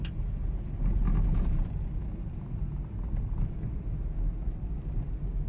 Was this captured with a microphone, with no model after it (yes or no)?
yes